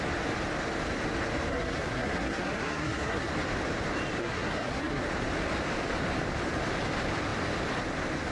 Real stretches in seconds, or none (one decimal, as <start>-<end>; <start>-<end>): 0.0-1.5; 3.3-4.2; 5.0-8.3